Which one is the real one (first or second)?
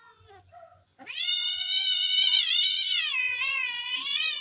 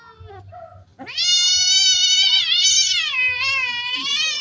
second